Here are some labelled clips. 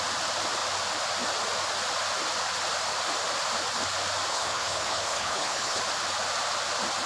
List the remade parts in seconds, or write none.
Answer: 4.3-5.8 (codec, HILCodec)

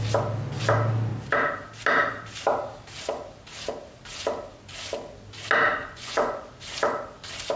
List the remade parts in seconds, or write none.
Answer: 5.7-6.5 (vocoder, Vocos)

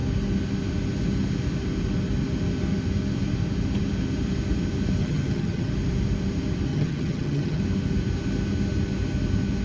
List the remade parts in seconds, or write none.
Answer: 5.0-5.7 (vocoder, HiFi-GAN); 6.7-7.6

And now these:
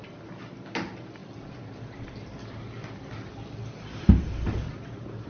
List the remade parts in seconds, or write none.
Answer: none